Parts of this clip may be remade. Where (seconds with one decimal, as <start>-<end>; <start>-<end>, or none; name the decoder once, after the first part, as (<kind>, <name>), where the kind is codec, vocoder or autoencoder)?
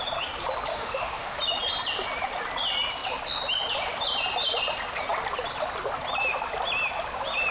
0.7-1.4 (autoencoder, DAC-VAE)